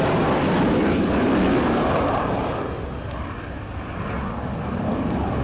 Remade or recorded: recorded